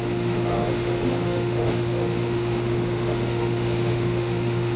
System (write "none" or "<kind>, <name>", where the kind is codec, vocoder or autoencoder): autoencoder, DAC-VAE